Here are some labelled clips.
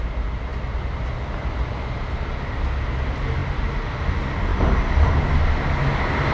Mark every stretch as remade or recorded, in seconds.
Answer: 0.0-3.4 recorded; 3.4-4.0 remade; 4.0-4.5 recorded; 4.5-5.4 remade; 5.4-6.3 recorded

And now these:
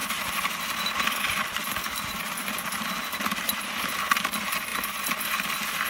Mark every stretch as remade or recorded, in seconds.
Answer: 0.0-5.9 recorded

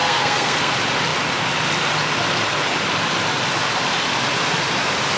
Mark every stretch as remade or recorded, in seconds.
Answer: 0.0-0.7 remade; 0.7-5.2 recorded

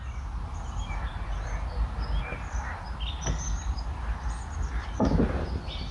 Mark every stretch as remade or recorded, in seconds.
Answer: 0.0-5.9 recorded

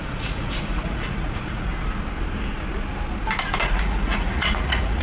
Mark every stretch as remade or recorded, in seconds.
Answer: 0.0-1.7 remade; 1.7-3.6 recorded; 3.6-5.0 remade

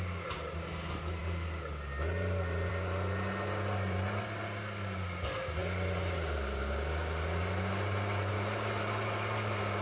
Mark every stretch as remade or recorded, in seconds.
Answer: 0.0-9.8 recorded

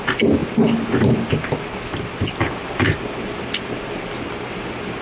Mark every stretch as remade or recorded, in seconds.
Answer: 0.0-5.0 recorded